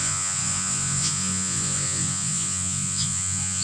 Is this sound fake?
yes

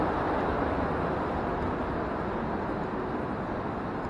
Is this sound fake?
no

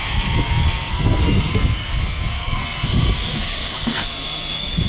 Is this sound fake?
yes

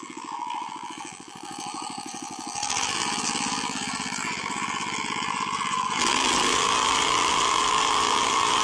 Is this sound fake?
yes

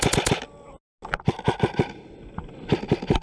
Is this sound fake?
no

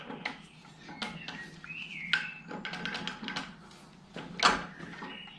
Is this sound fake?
no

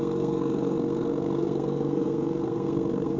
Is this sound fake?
yes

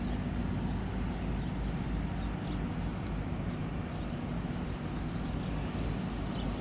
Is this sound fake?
no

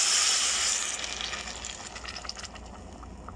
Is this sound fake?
no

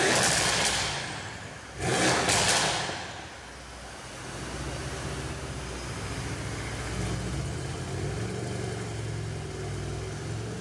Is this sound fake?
no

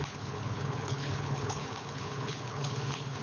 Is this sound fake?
yes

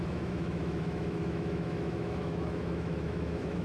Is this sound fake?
yes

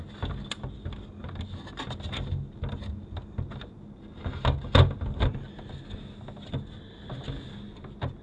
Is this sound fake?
no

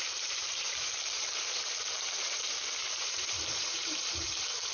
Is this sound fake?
yes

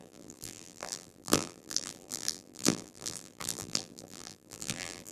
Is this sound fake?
yes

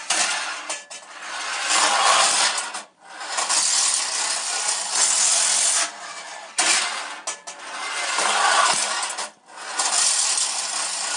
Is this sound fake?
no